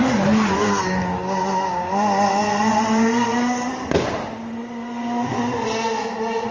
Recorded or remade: recorded